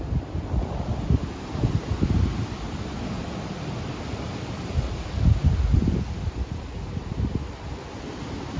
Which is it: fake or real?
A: real